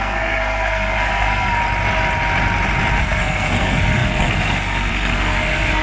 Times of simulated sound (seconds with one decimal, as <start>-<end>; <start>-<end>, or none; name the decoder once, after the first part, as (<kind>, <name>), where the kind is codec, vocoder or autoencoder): 0.0-1.6 (codec, SNAC); 3.0-5.8